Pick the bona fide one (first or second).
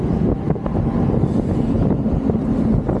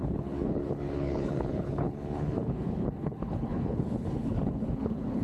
first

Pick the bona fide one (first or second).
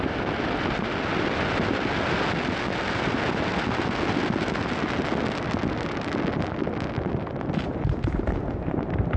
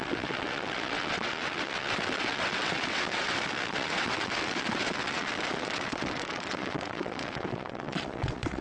first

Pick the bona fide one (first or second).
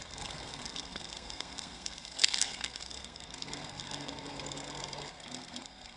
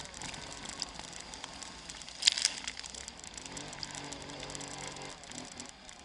second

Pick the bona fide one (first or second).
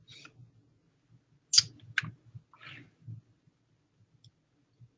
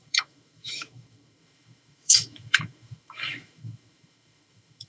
first